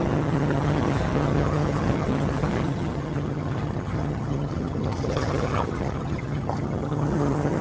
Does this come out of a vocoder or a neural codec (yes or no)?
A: yes